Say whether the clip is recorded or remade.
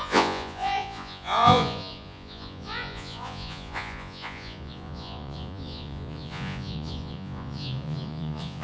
remade